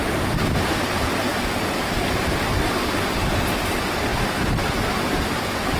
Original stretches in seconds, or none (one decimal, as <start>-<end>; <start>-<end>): 0.0-1.3; 1.8-5.8